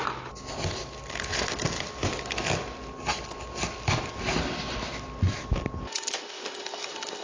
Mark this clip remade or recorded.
recorded